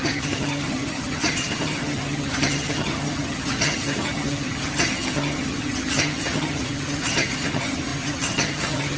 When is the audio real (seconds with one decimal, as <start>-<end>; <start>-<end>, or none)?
none